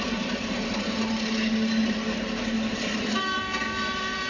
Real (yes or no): no